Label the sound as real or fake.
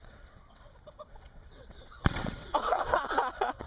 fake